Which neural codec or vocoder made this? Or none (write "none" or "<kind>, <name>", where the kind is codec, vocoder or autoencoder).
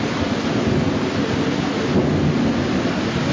none